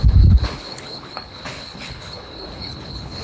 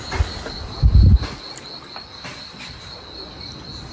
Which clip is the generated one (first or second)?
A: first